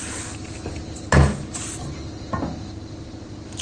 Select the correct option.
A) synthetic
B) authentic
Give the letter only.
B